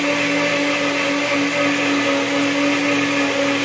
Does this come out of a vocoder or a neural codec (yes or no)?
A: no